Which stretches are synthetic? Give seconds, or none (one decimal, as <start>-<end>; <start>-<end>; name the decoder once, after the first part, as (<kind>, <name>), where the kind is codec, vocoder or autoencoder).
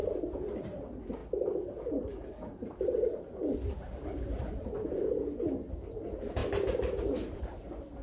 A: 0.0-1.2 (vocoder, BigVGAN v2); 6.0-8.0